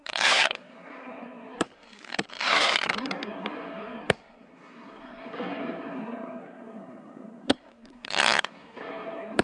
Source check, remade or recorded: remade